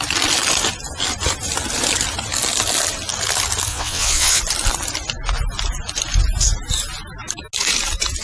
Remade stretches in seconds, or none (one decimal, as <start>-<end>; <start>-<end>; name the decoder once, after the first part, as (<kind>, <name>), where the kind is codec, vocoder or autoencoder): 3.7-4.4 (vocoder, WaveNeXt)